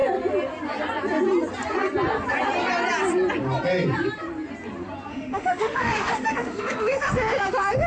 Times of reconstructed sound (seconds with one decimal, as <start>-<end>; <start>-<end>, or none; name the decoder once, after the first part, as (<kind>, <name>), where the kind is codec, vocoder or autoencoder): 5.1-7.9 (autoencoder, DAC-VAE)

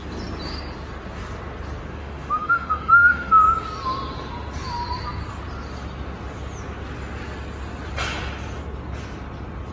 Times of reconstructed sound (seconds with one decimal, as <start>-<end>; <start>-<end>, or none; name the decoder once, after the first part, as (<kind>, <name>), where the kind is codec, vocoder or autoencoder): 2.0-3.3 (autoencoder, DAC-VAE)

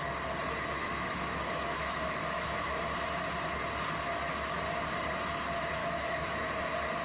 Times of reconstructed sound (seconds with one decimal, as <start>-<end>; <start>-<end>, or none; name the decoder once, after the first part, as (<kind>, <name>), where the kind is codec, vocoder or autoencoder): 0.8-2.8 (autoencoder, DAC-VAE); 5.8-6.5

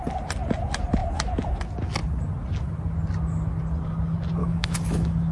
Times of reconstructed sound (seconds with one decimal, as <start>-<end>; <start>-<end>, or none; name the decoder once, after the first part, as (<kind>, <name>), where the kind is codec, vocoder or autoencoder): 4.4-5.3 (autoencoder, DAC-VAE)

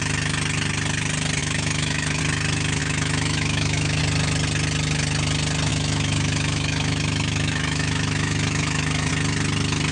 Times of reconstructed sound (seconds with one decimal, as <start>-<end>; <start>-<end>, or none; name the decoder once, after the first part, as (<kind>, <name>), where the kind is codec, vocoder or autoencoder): 1.4-2.2 (autoencoder, DAC-VAE); 2.8-4.0; 5.7-9.1